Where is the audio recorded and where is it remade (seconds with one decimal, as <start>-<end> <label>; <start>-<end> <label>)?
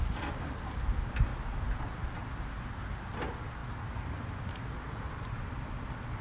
0.0-6.2 recorded